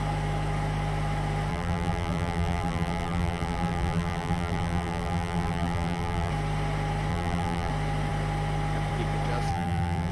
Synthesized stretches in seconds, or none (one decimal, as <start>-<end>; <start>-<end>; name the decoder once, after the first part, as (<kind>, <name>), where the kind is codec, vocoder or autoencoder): 1.5-6.3 (vocoder, BigVGAN v2); 7.1-7.7; 9.5-10.1